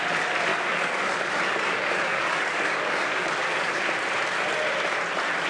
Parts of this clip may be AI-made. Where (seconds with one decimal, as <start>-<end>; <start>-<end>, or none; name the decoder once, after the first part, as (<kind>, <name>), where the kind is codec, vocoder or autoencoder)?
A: 0.5-3.8 (codec, DAC)